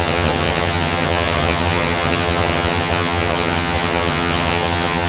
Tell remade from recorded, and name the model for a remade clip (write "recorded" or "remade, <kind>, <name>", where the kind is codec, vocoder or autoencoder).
remade, vocoder, HiFi-GAN